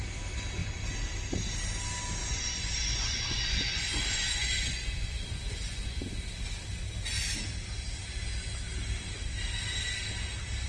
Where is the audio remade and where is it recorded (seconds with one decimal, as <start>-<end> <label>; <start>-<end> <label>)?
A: 0.0-2.2 recorded; 2.2-6.2 remade; 6.2-10.7 recorded